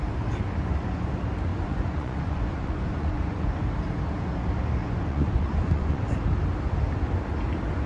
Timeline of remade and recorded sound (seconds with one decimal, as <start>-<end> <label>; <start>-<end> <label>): 0.0-1.5 recorded; 1.5-3.6 remade; 3.6-4.8 recorded; 4.8-6.1 remade; 6.1-7.9 recorded